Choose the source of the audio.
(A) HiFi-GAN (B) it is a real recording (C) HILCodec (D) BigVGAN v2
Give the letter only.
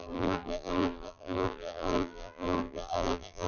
D